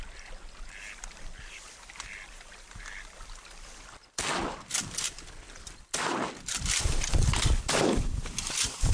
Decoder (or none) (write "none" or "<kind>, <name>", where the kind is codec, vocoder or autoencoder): vocoder, BigVGAN v2